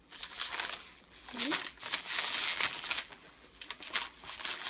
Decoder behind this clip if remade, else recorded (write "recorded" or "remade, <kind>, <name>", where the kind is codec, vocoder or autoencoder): remade, vocoder, BigVGAN v2